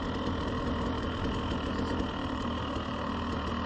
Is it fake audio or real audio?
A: real